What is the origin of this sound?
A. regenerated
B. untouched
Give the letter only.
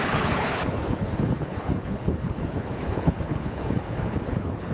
A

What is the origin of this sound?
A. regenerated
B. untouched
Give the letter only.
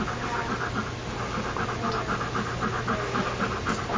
B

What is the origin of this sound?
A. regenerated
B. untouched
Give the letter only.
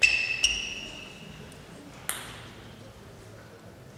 B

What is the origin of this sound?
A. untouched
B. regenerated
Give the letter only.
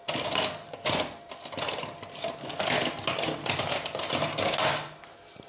A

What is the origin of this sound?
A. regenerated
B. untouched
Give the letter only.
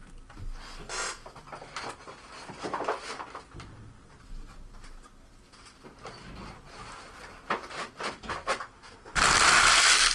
B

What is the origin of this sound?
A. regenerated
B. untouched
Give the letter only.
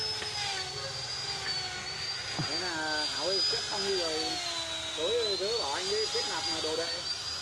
B